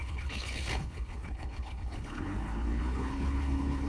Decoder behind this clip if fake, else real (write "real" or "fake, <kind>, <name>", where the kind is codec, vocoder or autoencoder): fake, codec, HILCodec